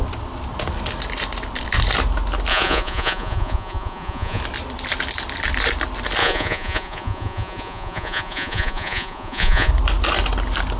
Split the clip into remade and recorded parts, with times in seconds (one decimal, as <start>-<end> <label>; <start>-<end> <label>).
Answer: 0.0-2.5 recorded; 2.5-4.4 remade; 4.4-6.2 recorded; 6.2-9.7 remade; 9.7-10.8 recorded